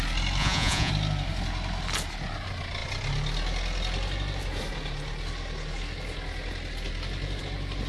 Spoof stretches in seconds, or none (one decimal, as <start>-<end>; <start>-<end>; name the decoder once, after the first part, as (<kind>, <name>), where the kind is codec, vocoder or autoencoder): 0.4-0.9 (vocoder, Vocos)